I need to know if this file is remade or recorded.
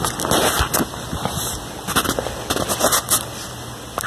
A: recorded